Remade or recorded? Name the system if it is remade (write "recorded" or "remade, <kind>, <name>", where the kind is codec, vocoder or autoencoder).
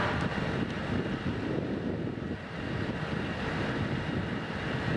remade, vocoder, BigVGAN v2